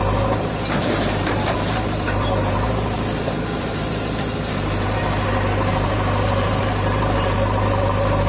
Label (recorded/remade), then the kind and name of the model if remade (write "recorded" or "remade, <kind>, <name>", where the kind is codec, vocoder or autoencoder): remade, vocoder, BigVGAN v2